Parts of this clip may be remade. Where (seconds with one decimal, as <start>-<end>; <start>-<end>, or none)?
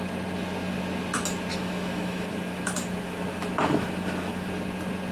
1.5-4.5